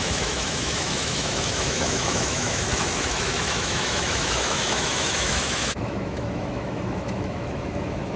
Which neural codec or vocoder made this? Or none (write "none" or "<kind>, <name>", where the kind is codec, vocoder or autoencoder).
autoencoder, DAC-VAE